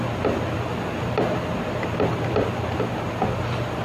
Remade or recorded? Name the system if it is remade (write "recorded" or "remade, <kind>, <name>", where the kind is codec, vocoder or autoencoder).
recorded